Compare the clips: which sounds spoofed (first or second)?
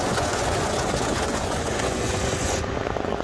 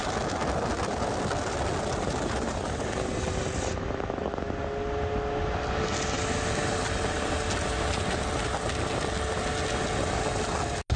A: first